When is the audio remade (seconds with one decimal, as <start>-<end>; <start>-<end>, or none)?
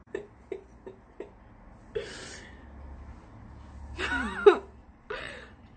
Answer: 4.8-5.8